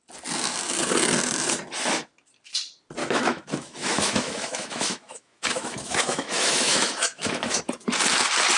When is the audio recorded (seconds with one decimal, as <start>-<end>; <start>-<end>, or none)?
0.0-3.0; 7.6-8.6